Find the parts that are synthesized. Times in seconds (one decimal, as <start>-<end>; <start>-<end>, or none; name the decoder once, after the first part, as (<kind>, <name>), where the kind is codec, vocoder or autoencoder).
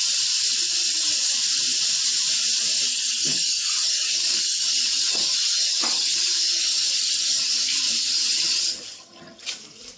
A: 2.9-7.5 (vocoder, HiFi-GAN); 8.0-9.6